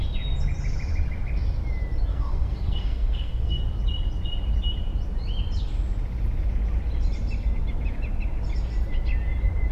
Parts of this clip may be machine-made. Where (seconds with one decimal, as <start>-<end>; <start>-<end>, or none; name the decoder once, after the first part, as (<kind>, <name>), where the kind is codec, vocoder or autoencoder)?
2.1-3.6 (codec, SNAC)